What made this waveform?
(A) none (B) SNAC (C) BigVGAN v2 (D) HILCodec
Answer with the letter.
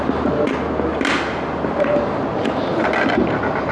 A